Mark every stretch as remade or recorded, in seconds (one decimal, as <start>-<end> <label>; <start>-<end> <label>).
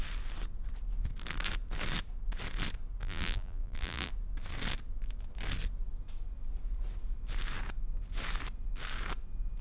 0.0-3.0 recorded; 3.0-4.1 remade; 4.1-9.6 recorded